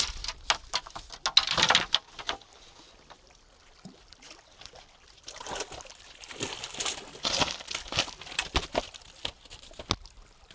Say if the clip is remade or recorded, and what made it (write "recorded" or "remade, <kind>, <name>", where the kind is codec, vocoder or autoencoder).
recorded